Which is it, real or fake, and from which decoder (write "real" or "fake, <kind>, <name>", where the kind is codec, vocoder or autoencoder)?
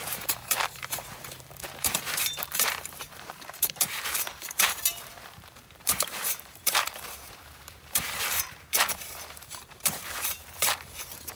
fake, vocoder, BigVGAN v2